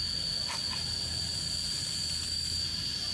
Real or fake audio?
real